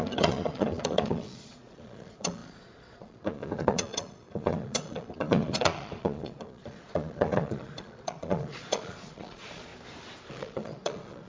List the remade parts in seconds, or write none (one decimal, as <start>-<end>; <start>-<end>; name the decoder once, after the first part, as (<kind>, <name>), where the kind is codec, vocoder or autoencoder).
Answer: 0.0-9.7 (vocoder, Vocos); 10.3-11.3